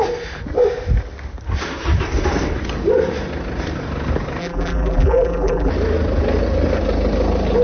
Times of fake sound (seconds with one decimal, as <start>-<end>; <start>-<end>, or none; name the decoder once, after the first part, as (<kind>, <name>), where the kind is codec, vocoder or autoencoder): 4.4-5.7 (vocoder, BigVGAN v2)